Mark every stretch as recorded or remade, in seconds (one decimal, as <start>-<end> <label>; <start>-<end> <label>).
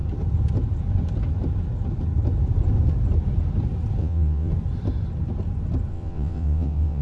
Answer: 0.0-4.0 recorded; 4.0-4.5 remade; 4.5-5.9 recorded; 5.9-7.0 remade